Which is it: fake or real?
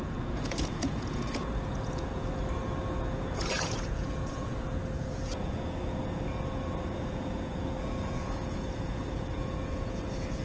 fake